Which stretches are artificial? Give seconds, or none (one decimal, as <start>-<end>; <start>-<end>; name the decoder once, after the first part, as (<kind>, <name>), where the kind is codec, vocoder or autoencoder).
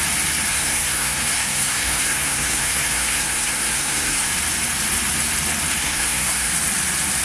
0.5-4.3 (codec, SNAC); 5.8-6.5